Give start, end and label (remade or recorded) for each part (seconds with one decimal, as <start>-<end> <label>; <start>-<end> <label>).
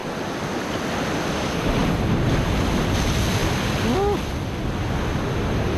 0.0-5.8 recorded